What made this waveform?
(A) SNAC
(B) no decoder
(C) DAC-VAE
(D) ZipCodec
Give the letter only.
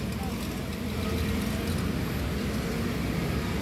B